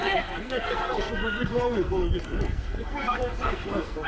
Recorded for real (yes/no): no